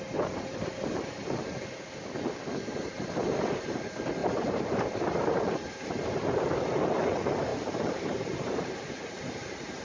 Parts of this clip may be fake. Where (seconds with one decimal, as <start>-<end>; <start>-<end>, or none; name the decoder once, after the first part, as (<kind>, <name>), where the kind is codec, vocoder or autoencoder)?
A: 4.2-6.6 (vocoder, BigVGAN v2); 7.5-8.9